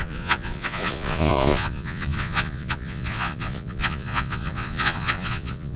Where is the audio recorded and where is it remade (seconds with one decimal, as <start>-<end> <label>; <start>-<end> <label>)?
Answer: 0.0-5.8 remade